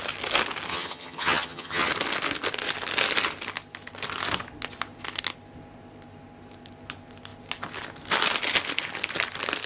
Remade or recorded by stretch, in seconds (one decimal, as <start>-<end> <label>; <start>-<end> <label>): 0.0-0.7 recorded; 0.7-1.9 remade; 1.9-9.7 recorded